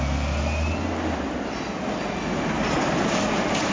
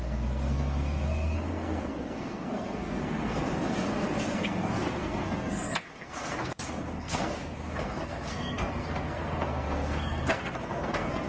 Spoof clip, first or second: second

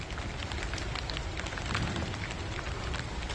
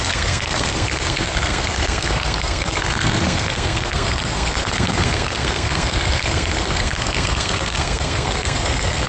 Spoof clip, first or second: second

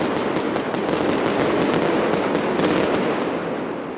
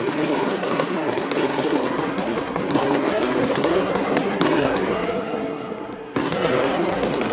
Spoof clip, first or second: second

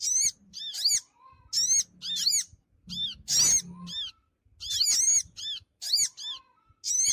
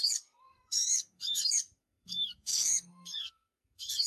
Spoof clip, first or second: second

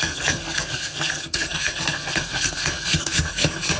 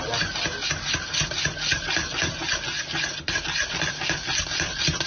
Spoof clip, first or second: first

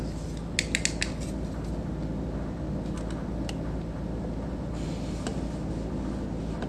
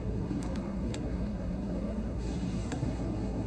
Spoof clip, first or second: second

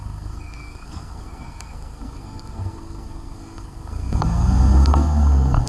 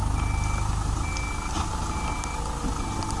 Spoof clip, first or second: first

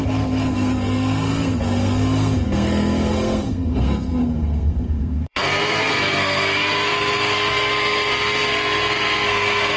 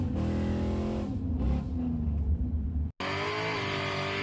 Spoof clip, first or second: first